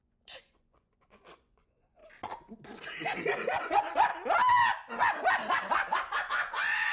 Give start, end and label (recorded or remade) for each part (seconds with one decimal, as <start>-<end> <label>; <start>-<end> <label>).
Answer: 0.0-2.0 remade; 2.0-3.6 recorded; 3.6-4.1 remade; 4.1-6.3 recorded; 6.3-6.9 remade

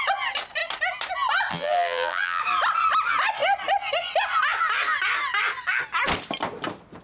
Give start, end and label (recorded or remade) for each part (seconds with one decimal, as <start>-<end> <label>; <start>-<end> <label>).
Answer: 0.0-1.5 recorded; 1.5-2.4 remade; 2.4-7.0 recorded

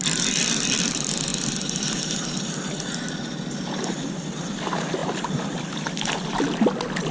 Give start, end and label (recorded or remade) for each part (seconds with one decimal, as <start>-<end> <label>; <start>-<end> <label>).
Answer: 0.0-7.1 recorded

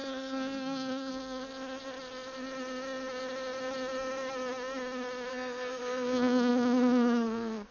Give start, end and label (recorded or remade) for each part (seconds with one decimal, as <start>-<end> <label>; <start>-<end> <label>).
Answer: 0.0-1.5 remade; 1.5-5.3 recorded; 5.3-7.7 remade

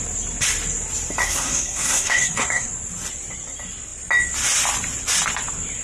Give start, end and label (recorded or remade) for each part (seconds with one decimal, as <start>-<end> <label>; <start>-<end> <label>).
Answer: 0.0-1.2 recorded; 1.2-2.7 remade; 2.7-5.8 recorded